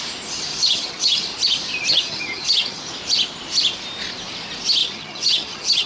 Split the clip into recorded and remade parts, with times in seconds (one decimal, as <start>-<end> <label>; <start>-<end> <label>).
0.0-0.5 recorded; 0.5-1.2 remade; 1.2-1.9 recorded; 1.9-2.8 remade; 2.8-4.8 recorded; 4.8-5.9 remade